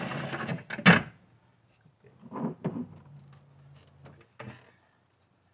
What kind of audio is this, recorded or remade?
recorded